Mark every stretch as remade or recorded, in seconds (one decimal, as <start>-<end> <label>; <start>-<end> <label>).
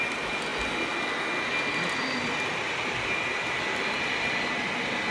0.0-5.1 recorded